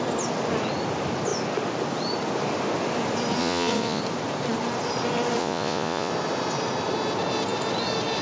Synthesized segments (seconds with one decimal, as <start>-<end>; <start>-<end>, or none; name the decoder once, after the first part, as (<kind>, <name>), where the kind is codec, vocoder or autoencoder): 3.4-4.0 (vocoder, Vocos); 5.4-6.1